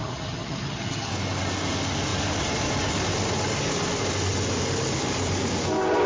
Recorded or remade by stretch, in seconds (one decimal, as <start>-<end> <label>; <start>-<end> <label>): 0.0-1.1 remade; 1.1-6.1 recorded